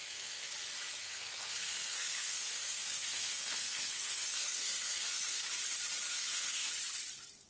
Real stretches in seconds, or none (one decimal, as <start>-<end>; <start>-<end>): 0.5-1.0; 5.5-6.1; 6.7-7.5